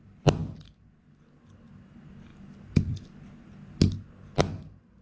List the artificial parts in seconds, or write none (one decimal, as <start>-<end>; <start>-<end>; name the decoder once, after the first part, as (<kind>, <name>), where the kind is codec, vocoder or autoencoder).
none